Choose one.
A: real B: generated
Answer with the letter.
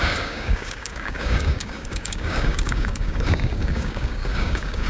B